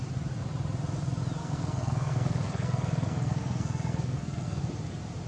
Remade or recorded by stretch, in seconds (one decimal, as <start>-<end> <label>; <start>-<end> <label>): 0.0-1.4 recorded; 1.4-4.6 remade; 4.6-5.3 recorded